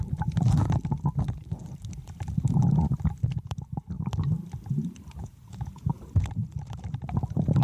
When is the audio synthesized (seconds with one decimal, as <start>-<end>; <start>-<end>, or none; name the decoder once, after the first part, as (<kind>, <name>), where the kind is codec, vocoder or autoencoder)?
5.2-5.9 (vocoder, Vocos)